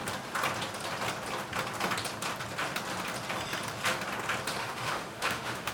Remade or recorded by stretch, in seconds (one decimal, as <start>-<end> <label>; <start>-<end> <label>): 0.0-4.6 recorded; 4.6-5.7 remade